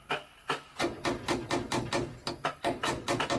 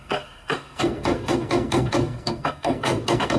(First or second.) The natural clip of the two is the first